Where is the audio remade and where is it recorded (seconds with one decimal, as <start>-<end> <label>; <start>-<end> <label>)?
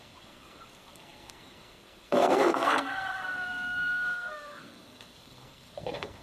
0.0-6.2 remade